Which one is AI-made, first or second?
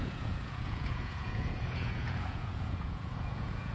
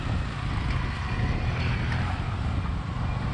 first